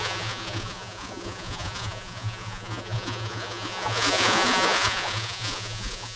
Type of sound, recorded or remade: remade